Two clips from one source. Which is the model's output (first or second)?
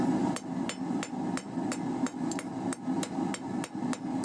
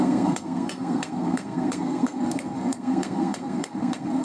second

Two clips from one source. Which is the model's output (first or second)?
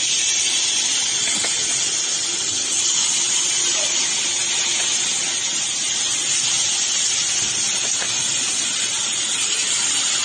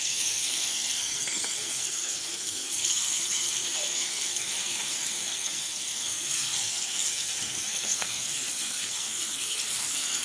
second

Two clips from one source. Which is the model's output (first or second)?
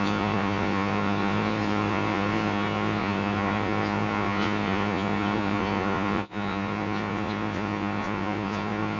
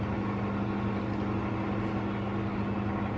first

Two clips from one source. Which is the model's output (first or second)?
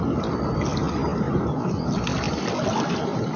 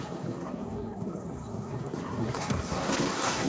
second